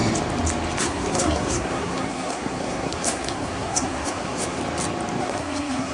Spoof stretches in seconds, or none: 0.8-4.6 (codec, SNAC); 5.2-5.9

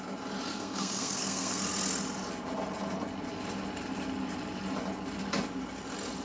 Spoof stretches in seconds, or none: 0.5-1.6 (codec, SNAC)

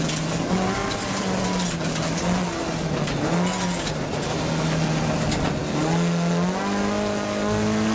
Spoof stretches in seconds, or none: none

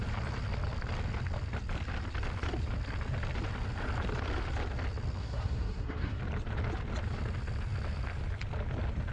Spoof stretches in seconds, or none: 5.2-6.2 (codec, SNAC)

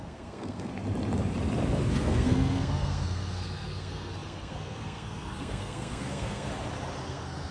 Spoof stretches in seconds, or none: 0.0-0.7 (codec, SNAC); 1.9-6.5; 7.1-7.5